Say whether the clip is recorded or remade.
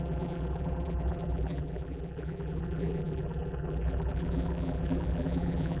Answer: remade